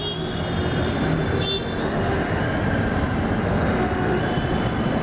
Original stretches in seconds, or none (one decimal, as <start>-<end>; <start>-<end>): 0.0-1.8; 2.4-3.4; 4.2-5.0